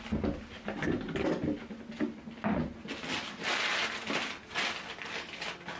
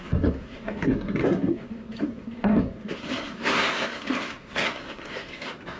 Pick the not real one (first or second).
second